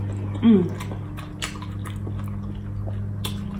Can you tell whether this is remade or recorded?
recorded